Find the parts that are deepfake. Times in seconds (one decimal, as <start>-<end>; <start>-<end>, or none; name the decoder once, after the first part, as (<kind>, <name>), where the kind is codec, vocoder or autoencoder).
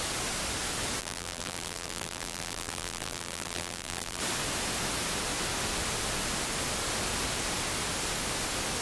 1.0-4.2 (vocoder, BigVGAN v2)